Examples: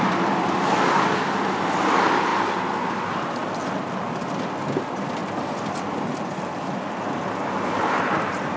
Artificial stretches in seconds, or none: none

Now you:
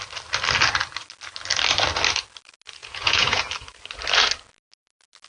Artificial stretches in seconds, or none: 2.8-3.4 (vocoder, Vocos)

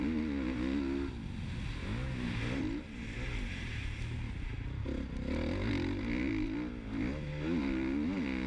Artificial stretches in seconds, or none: 1.8-2.3 (autoencoder, DAC-VAE)

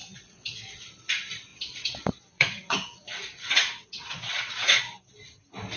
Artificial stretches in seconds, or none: 0.0-0.9 (vocoder, WaveNeXt); 1.5-4.8

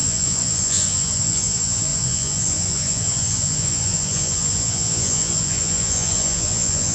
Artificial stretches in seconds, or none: 0.0-6.9 (vocoder, Vocos)